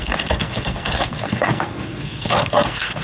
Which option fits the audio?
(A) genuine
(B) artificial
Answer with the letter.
B